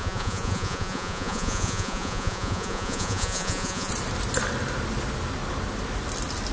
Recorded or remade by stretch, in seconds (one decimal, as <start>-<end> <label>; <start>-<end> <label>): 0.0-3.9 remade; 3.9-6.5 recorded